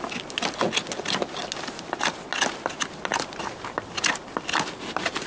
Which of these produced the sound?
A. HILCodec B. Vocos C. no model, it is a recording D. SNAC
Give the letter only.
C